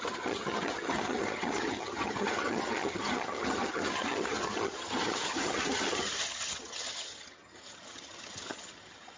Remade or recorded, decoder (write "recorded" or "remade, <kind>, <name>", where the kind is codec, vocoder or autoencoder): remade, vocoder, HiFi-GAN